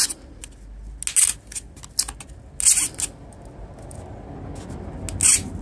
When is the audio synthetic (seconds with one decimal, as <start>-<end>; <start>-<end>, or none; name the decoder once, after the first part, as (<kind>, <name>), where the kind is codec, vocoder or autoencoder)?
none